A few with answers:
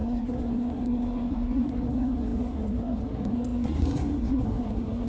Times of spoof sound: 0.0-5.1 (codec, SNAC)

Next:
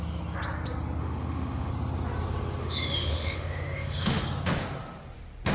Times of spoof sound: 1.0-1.7 (autoencoder, DAC-VAE); 2.6-4.2

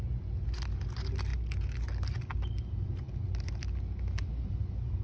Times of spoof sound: none

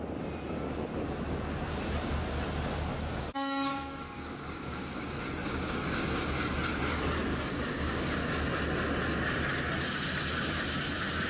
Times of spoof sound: 3.1-6.4 (codec, DAC); 7.3-8.3

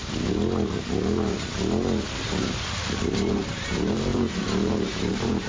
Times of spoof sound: 3.3-5.5 (vocoder, BigVGAN v2)

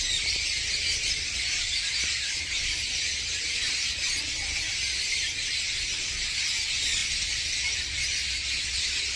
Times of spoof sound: none

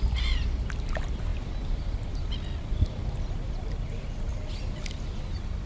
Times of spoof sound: none

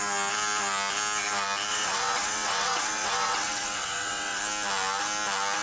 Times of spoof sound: 1.7-4.4 (vocoder, WaveNeXt)